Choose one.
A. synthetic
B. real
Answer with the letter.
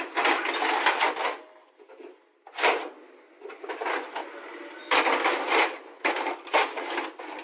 B